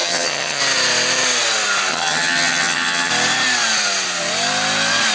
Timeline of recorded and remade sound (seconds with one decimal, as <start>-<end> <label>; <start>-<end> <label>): 0.0-0.6 remade; 0.6-1.9 recorded; 1.9-3.1 remade; 3.1-5.1 recorded

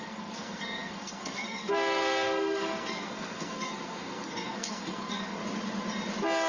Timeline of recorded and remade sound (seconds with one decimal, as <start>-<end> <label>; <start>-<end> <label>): 0.0-5.4 remade; 5.4-6.5 recorded